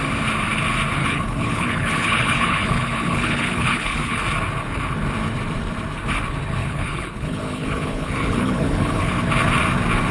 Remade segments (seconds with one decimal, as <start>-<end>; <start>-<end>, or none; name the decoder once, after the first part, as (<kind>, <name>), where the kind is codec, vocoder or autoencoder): 1.0-4.2 (codec, HILCodec); 6.6-9.1

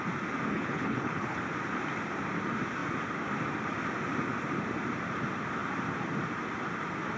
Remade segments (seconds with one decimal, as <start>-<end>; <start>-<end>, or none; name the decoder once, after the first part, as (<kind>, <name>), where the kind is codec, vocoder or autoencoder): 0.5-1.4 (codec, HILCodec)

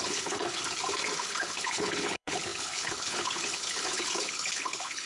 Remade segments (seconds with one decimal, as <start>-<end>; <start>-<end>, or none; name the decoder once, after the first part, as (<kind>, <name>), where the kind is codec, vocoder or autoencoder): 0.0-0.6 (codec, HILCodec); 1.2-5.1

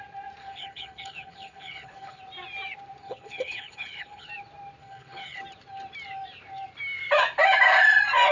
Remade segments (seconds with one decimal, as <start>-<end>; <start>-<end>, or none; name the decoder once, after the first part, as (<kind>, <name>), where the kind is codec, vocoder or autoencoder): 0.4-2.2 (codec, HILCodec); 3.0-4.3; 4.8-5.4

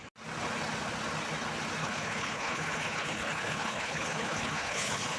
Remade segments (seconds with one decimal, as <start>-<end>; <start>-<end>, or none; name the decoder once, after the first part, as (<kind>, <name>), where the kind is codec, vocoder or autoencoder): 1.8-5.2 (codec, HILCodec)

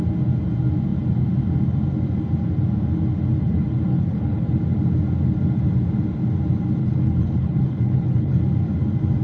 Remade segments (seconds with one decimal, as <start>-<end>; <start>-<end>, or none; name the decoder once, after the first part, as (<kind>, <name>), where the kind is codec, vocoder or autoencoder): 3.9-4.4 (codec, HILCodec); 6.8-8.4

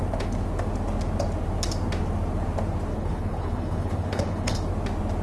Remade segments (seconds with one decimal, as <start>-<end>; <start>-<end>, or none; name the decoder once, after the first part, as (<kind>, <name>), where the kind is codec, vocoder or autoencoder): 2.9-4.7 (codec, HILCodec)

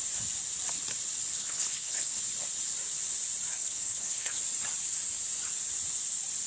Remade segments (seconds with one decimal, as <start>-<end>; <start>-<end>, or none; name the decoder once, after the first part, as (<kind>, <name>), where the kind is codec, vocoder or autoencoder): 1.3-2.2 (codec, HILCodec); 3.6-4.4